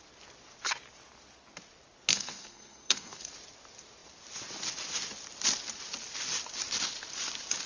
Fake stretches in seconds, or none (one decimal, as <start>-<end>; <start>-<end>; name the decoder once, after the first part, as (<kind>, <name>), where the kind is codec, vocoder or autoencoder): 2.1-3.3 (codec, SNAC)